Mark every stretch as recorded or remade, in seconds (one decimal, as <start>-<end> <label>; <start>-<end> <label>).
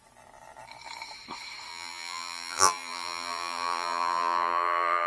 0.0-1.7 recorded; 1.7-5.1 remade